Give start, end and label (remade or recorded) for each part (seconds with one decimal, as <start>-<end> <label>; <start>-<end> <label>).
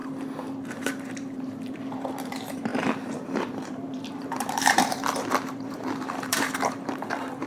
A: 0.0-0.7 recorded; 0.7-7.5 remade